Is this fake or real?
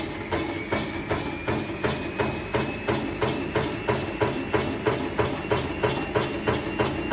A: real